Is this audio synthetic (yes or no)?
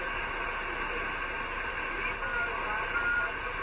no